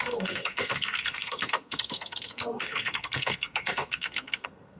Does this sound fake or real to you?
fake